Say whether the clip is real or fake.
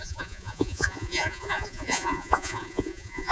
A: fake